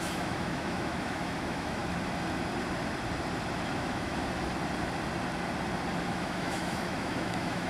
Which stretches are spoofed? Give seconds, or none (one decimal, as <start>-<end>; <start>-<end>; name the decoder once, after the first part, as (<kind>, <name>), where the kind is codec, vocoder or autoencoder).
0.0-1.8 (autoencoder, DAC-VAE); 3.8-4.2; 6.0-7.7